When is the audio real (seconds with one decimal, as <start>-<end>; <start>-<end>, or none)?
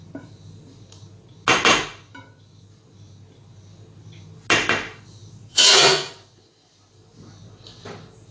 0.0-5.5; 6.1-8.3